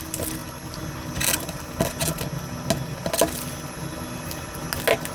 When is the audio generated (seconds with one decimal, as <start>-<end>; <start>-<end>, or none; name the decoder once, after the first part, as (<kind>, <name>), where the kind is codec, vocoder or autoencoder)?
none